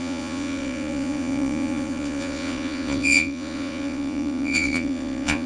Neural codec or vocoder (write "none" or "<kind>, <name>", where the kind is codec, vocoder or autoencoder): vocoder, Vocos